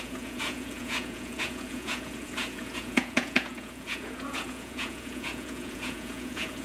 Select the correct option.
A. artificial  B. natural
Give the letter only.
A